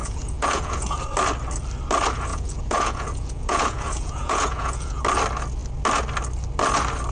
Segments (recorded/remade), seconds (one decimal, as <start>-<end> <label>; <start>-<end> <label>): 0.0-1.0 remade; 1.0-2.3 recorded; 2.3-5.0 remade; 5.0-7.1 recorded